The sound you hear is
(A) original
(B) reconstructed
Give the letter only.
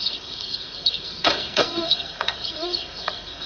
B